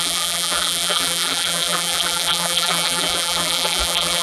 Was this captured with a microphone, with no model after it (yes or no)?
no